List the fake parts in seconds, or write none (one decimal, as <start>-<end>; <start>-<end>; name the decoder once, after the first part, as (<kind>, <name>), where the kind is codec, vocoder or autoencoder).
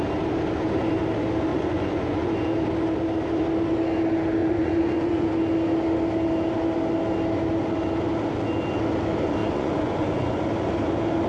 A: 1.5-2.3 (vocoder, Vocos); 4.4-5.3; 9.4-10.4